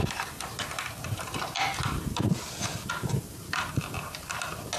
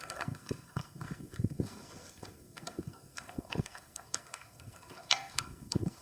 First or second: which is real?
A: first